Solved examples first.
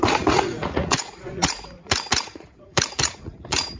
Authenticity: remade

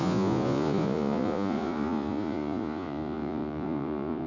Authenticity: remade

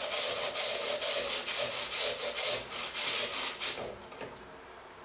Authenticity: recorded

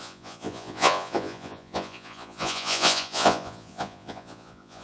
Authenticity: remade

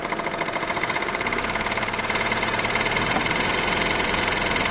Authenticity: remade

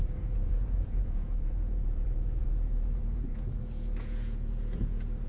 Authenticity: remade